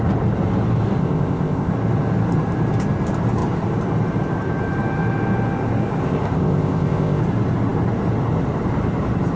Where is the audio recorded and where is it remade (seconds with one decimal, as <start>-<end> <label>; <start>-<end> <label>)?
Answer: 0.0-1.0 recorded; 1.0-1.7 remade; 1.7-6.0 recorded; 6.0-7.2 remade; 7.2-9.4 recorded

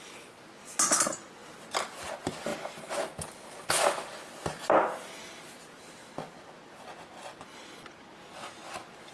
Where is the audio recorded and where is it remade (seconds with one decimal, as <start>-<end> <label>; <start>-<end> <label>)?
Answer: 0.0-9.1 recorded

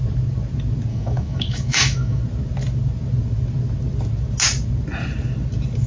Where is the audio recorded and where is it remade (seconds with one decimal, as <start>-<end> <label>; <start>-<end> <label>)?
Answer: 0.0-0.9 recorded; 0.9-2.2 remade; 2.2-5.9 recorded

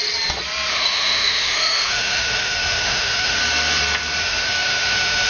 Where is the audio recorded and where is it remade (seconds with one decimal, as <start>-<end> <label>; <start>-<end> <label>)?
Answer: 0.0-0.7 recorded; 0.7-3.4 remade; 3.4-4.2 recorded; 4.2-5.3 remade

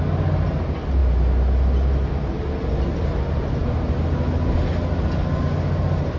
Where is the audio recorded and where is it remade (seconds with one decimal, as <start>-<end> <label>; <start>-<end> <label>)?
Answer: 0.0-6.2 recorded